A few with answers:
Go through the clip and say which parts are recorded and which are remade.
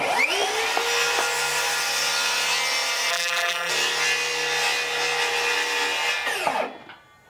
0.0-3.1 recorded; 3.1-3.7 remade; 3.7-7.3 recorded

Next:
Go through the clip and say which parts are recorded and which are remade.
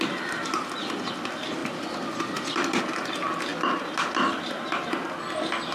0.0-5.7 recorded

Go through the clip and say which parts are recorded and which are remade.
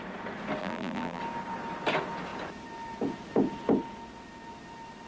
0.0-0.6 recorded; 0.6-1.2 remade; 1.2-5.1 recorded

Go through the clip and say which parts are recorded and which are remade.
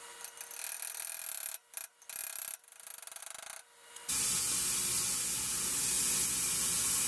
0.0-7.1 recorded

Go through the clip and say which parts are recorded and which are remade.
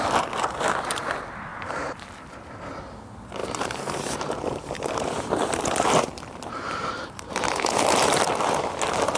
0.0-1.5 recorded; 1.5-2.8 remade; 2.8-3.4 recorded; 3.4-8.2 remade; 8.2-9.2 recorded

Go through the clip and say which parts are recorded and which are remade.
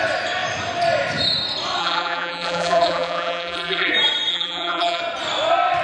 0.0-1.8 recorded; 1.8-3.9 remade; 3.9-4.3 recorded; 4.3-5.0 remade; 5.0-5.8 recorded